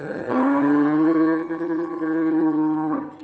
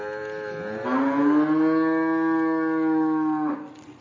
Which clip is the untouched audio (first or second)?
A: second